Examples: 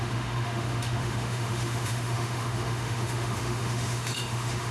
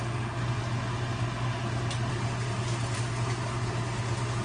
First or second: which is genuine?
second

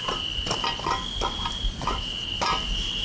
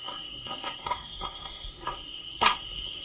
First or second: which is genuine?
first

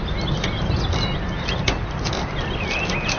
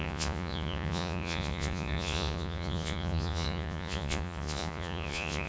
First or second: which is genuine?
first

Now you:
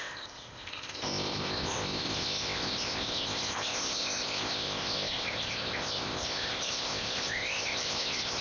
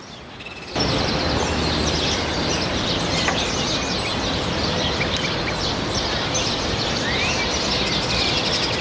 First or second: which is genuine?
second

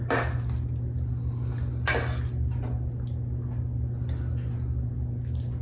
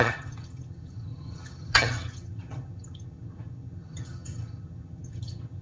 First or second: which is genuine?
first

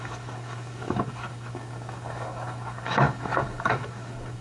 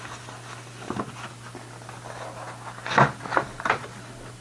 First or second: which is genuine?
second